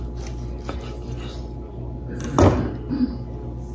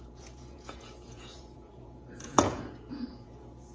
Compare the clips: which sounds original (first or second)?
first